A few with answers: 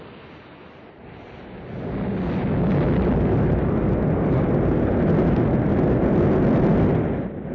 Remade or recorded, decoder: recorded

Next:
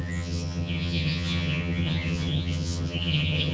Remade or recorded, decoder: remade, vocoder, HiFi-GAN